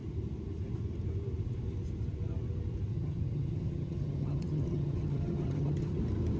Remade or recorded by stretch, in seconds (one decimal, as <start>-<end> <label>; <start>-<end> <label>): 0.0-2.9 recorded; 2.9-6.0 remade; 6.0-6.4 recorded